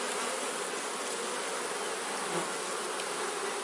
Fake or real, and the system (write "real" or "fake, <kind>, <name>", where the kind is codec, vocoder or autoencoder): real